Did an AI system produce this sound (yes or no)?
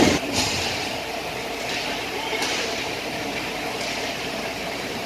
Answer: yes